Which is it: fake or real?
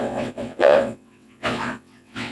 fake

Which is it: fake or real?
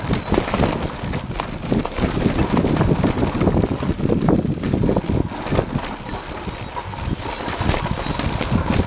real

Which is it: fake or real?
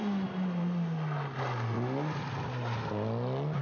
real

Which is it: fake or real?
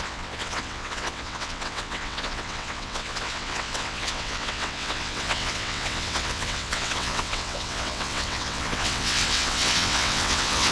fake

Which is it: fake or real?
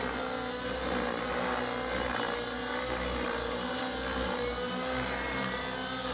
real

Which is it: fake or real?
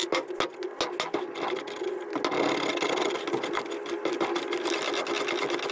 real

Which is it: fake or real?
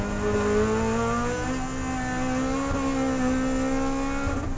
real